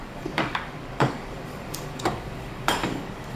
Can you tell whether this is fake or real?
fake